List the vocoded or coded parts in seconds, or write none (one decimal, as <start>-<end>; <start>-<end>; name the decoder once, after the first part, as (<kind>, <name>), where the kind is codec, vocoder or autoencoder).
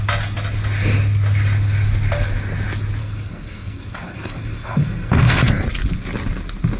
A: 3.0-5.6 (codec, SNAC)